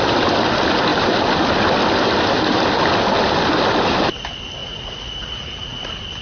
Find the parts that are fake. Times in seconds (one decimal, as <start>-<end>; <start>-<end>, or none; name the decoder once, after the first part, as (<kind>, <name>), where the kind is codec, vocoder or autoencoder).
4.6-5.8 (vocoder, Vocos)